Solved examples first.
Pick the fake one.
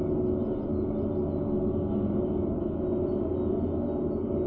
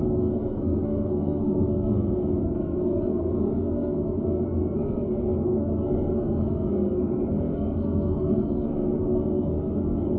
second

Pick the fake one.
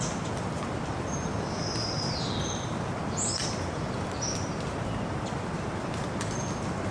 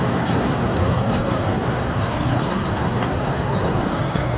second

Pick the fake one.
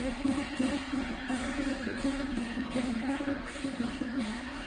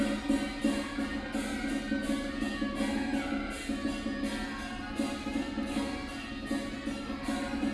first